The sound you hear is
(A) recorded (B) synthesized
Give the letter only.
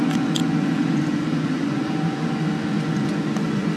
B